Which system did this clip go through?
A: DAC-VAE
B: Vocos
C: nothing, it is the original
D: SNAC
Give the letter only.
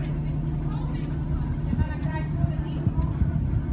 C